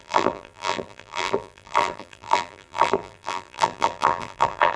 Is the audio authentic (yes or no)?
no